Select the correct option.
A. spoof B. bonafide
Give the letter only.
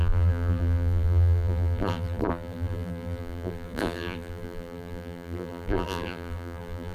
A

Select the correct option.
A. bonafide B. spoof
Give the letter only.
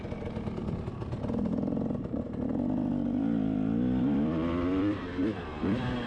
B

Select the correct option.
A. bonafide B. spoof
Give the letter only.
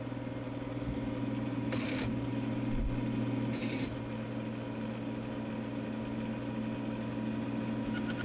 A